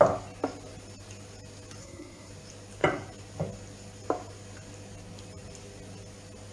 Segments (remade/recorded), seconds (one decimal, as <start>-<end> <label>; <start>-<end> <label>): 0.0-1.8 recorded; 1.8-2.3 remade; 2.3-6.5 recorded